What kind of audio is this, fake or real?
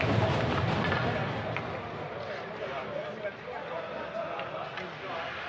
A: real